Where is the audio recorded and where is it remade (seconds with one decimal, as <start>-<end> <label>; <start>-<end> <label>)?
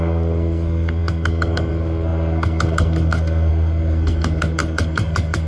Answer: 0.0-5.5 remade